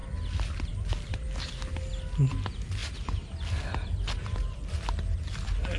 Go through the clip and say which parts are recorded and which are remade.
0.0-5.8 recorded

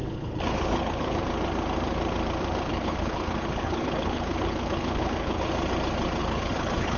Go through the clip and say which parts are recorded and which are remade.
0.0-1.2 remade; 1.2-2.7 recorded; 2.7-5.5 remade; 5.5-6.2 recorded; 6.2-7.0 remade

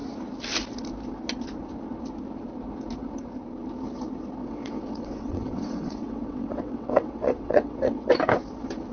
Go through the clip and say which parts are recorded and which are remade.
0.0-4.4 recorded; 4.4-8.1 remade; 8.1-8.9 recorded

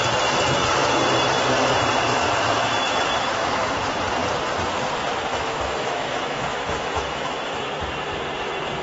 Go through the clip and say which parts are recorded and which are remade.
0.0-2.1 recorded; 2.1-3.7 remade; 3.7-5.3 recorded; 5.3-7.6 remade; 7.6-8.8 recorded

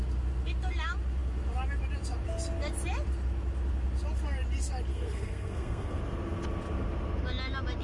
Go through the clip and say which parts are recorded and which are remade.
0.0-4.9 recorded; 4.9-6.0 remade; 6.0-7.8 recorded

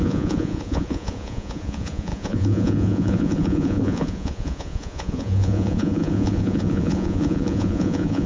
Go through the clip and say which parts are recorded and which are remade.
0.0-8.3 remade

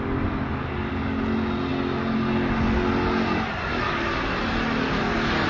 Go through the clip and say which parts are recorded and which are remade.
0.0-5.5 recorded

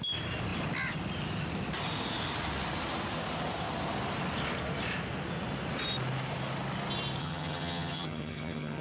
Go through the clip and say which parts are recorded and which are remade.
0.0-7.2 recorded; 7.2-8.8 remade